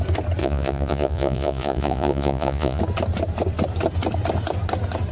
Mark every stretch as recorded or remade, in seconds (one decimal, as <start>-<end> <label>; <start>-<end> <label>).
0.0-0.4 recorded; 0.4-2.8 remade; 2.8-5.1 recorded